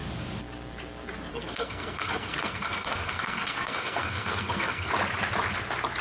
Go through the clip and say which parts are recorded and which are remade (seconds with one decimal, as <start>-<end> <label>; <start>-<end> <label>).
0.0-1.3 recorded; 1.3-4.9 remade; 4.9-6.0 recorded